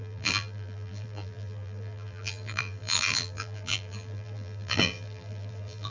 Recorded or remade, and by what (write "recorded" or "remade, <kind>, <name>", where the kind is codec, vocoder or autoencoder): remade, vocoder, BigVGAN v2